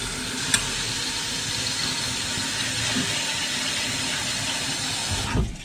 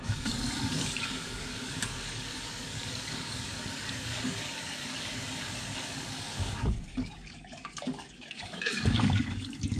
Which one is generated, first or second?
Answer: second